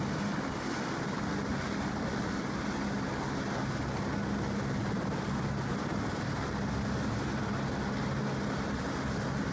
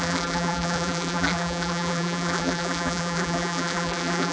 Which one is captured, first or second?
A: first